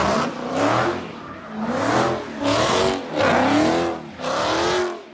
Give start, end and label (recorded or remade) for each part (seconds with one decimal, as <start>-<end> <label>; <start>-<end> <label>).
0.0-5.1 recorded